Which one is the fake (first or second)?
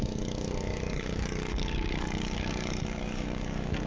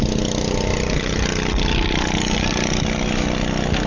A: first